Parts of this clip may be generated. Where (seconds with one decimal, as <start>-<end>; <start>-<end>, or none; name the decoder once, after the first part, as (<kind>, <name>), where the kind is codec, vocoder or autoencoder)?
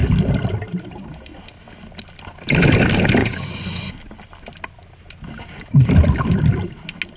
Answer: 3.2-3.9 (vocoder, Vocos)